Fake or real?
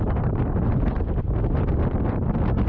real